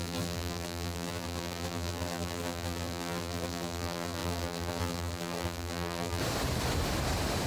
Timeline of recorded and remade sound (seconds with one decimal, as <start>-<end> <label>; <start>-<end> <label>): 0.0-6.2 remade; 6.2-7.5 recorded